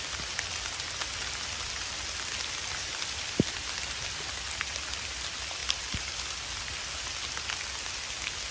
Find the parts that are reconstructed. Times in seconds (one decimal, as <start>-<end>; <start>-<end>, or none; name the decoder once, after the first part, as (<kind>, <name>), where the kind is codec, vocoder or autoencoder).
none